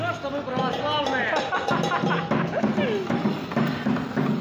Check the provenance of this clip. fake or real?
real